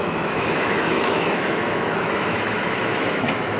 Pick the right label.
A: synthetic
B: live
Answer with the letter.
A